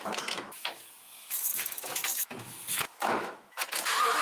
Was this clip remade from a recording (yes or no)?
yes